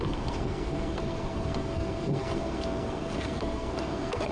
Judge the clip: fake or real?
fake